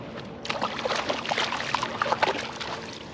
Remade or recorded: recorded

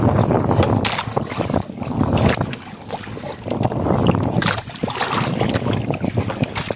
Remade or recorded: recorded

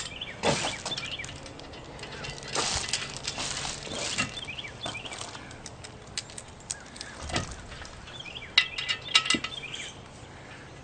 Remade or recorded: recorded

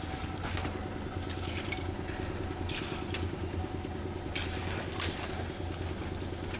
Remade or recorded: recorded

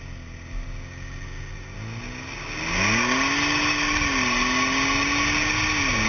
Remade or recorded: recorded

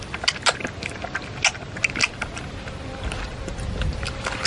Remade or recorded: recorded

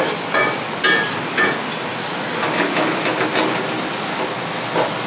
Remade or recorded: recorded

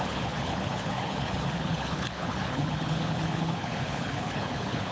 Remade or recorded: remade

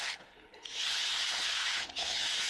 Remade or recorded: remade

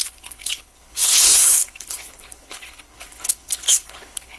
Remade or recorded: remade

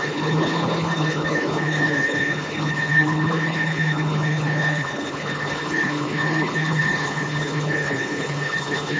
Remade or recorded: remade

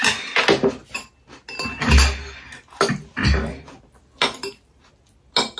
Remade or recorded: recorded